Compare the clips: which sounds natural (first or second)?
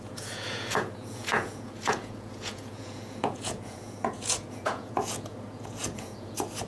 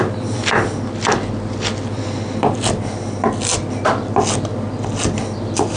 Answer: second